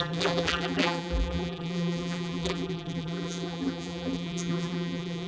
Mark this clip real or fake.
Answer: fake